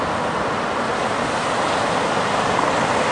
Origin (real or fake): real